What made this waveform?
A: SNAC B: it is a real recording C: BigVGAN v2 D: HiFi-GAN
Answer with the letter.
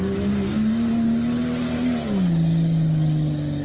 B